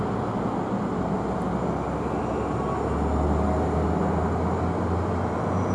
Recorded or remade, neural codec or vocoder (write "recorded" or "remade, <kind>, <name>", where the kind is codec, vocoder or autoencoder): recorded